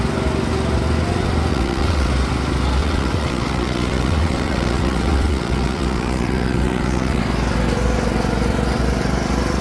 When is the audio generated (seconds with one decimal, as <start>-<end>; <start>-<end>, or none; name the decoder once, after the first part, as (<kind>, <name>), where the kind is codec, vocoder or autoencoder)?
1.5-2.1 (vocoder, WaveNeXt); 2.8-7.2